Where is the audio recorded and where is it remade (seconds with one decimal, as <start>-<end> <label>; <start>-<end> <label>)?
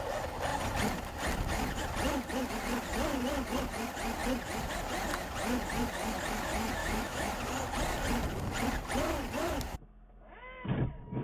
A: 0.0-6.8 recorded; 6.8-7.3 remade; 7.3-11.2 recorded